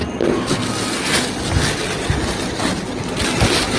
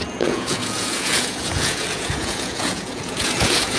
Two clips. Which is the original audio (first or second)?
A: first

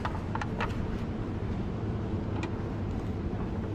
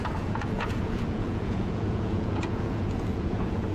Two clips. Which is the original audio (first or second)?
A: first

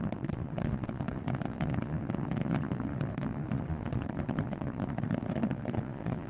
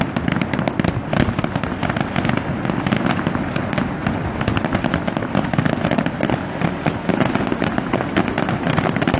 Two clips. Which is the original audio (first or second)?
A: second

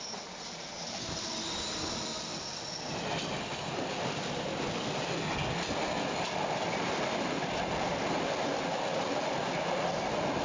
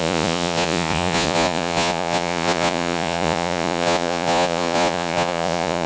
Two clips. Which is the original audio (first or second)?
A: first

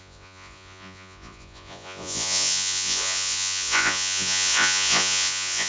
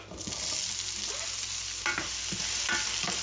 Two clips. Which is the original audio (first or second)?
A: second